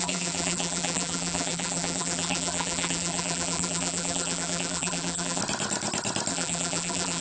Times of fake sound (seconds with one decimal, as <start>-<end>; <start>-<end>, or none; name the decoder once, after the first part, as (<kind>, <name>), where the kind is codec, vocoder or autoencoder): 0.0-5.4 (vocoder, BigVGAN v2); 6.3-7.2